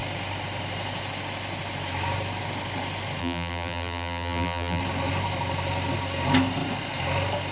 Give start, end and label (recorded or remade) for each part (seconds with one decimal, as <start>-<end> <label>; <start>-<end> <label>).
0.0-3.2 recorded; 3.2-4.8 remade; 4.8-7.5 recorded